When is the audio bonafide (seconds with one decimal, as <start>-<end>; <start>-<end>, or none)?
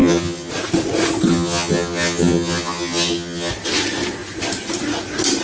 0.5-1.3; 3.5-5.4